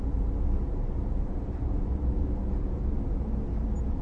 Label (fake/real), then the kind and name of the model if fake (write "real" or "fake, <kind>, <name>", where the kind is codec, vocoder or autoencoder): fake, vocoder, BigVGAN v2